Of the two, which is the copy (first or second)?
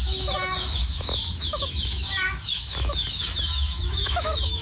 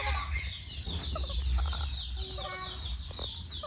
first